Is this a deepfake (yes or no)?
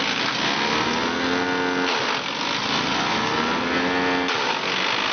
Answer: no